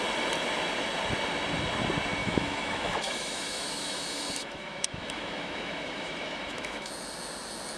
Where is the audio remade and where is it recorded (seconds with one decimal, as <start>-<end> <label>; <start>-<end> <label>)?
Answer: 0.0-2.2 recorded; 2.2-6.9 remade; 6.9-7.8 recorded